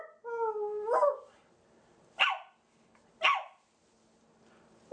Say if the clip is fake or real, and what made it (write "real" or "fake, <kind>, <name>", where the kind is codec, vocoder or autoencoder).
real